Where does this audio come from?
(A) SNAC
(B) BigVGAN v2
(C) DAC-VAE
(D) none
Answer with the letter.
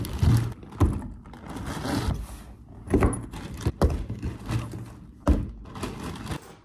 D